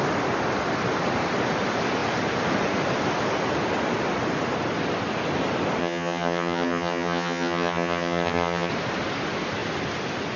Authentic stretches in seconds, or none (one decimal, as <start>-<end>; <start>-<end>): 0.0-5.8; 8.7-10.4